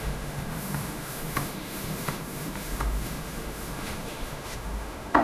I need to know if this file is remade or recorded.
remade